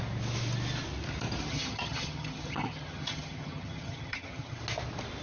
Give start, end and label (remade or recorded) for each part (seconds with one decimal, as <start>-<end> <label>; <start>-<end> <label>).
0.0-1.5 recorded; 1.5-4.6 remade; 4.6-5.2 recorded